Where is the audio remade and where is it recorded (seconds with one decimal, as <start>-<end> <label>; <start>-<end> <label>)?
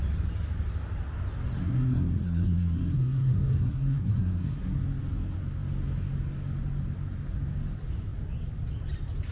0.0-1.6 recorded; 1.6-4.8 remade; 4.8-9.3 recorded